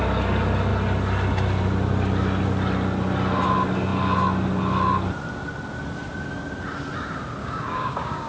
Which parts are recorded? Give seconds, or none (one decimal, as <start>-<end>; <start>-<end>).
0.0-7.4